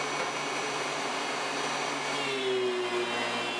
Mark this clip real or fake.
real